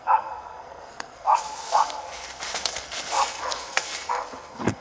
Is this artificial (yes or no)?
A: yes